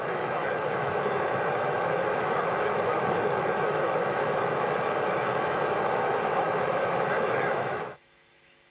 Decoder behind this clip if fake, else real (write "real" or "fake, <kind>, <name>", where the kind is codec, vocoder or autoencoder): fake, autoencoder, DAC-VAE